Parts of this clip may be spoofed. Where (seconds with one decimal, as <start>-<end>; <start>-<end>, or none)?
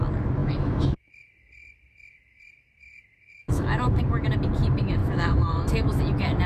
0.4-1.1; 3.4-4.0; 5.0-6.0